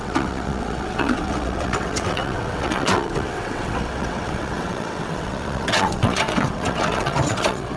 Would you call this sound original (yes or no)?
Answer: no